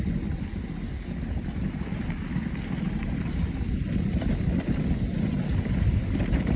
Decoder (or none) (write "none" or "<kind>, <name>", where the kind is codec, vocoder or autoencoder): none